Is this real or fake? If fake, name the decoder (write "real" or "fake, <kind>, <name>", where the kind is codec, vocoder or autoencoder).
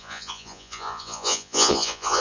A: fake, vocoder, Vocos